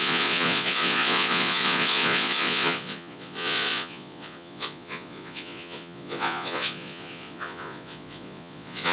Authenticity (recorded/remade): remade